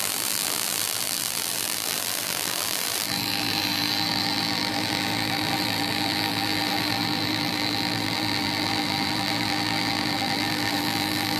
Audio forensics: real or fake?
fake